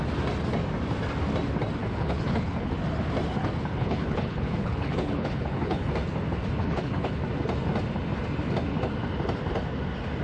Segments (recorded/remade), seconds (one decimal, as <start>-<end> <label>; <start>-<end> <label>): 0.0-1.8 recorded; 1.8-2.7 remade; 2.7-3.4 recorded; 3.4-5.9 remade; 5.9-6.6 recorded; 6.6-7.2 remade; 7.2-10.2 recorded